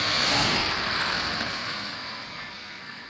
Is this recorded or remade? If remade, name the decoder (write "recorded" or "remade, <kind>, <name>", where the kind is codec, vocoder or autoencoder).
remade, codec, SNAC